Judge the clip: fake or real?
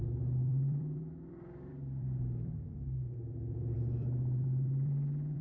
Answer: fake